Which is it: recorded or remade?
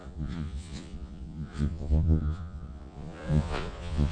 remade